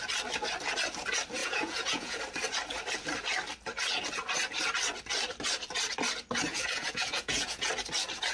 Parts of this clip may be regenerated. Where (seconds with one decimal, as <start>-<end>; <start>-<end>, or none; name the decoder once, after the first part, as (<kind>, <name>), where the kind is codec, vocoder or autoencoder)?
1.4-2.2 (vocoder, Vocos); 6.5-7.7